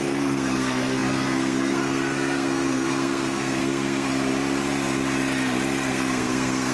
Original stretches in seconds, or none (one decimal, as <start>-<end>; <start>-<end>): 4.1-5.9